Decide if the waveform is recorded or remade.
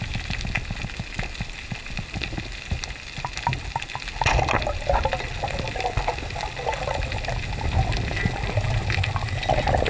recorded